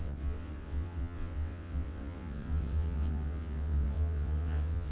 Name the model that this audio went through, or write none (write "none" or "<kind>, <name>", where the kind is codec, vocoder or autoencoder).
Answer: vocoder, WaveNeXt